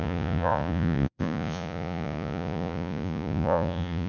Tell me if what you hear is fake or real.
fake